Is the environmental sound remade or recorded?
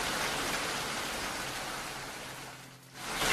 recorded